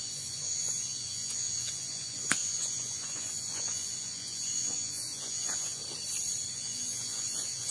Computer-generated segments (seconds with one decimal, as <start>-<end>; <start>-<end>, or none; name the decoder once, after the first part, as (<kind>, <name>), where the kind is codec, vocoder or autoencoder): 0.0-5.8 (vocoder, Vocos); 6.5-7.7